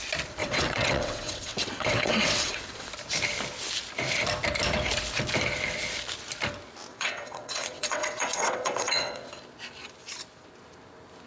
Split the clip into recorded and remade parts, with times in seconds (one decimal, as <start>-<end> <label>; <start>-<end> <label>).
0.0-0.4 recorded; 0.4-2.9 remade; 2.9-6.9 recorded; 6.9-9.3 remade; 9.3-11.3 recorded